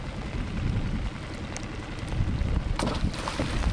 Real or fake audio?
real